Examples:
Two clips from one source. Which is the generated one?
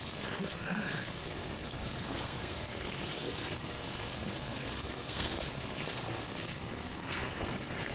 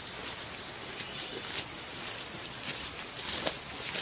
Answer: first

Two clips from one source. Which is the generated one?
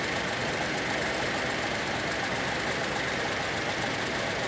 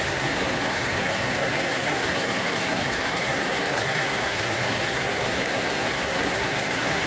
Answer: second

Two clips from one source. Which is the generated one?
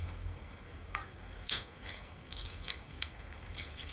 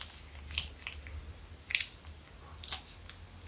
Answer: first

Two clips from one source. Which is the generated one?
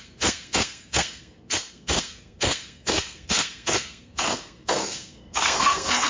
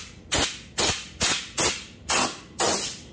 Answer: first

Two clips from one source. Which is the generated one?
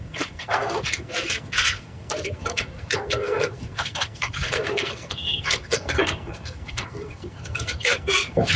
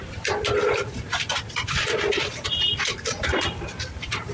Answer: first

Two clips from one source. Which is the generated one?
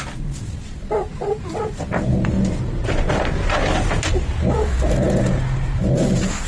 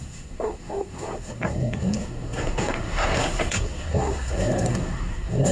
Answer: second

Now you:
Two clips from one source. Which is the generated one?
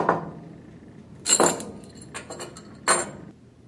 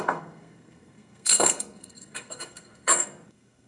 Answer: second